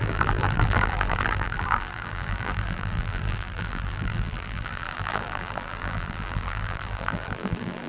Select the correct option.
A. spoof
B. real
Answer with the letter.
A